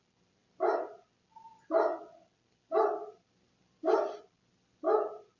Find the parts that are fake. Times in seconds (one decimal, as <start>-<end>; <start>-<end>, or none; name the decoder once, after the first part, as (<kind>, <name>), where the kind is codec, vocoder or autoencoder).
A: none